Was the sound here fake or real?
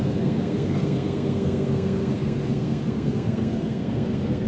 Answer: fake